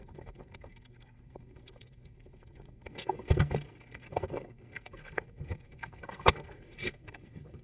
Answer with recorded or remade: remade